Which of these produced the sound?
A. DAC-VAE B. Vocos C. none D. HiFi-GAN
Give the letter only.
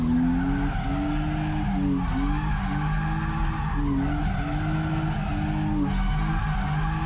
C